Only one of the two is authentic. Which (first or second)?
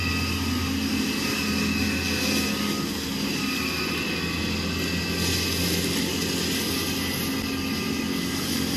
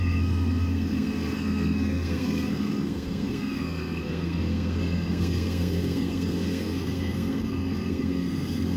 first